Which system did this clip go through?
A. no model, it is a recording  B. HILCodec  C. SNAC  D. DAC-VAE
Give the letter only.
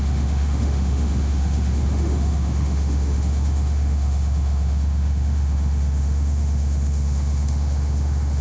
D